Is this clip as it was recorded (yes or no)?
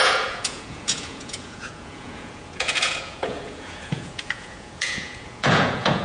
no